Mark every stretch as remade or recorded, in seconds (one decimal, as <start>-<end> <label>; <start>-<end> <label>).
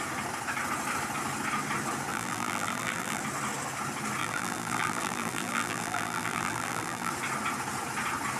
0.0-2.1 recorded; 2.1-3.2 remade; 3.2-4.2 recorded; 4.2-7.1 remade; 7.1-8.4 recorded